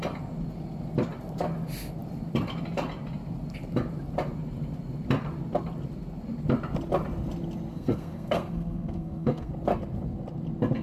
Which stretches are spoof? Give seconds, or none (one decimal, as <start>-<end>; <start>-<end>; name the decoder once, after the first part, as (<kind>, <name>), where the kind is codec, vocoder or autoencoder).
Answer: 7.7-9.5 (codec, SNAC)